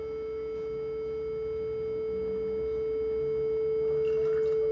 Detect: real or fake real